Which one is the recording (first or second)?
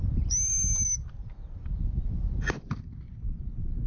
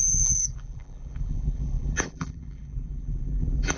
first